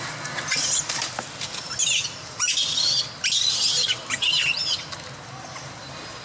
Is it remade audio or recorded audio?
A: recorded